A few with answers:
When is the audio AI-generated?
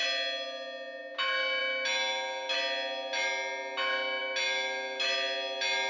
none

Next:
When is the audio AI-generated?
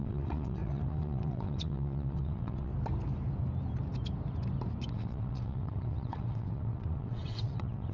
0.0-2.7; 4.9-7.9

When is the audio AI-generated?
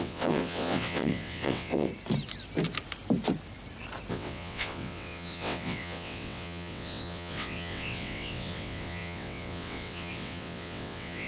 0.0-1.9; 4.1-11.3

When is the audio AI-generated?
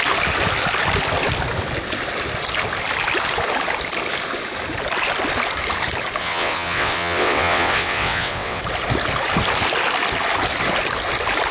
6.2-8.6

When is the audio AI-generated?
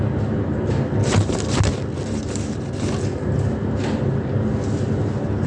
none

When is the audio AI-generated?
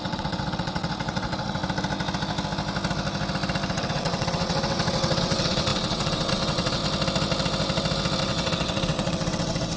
0.0-1.6; 3.7-6.8; 8.2-9.8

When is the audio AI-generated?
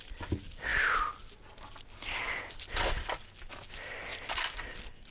none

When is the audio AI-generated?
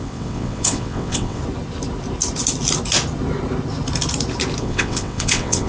0.0-1.4; 4.6-5.7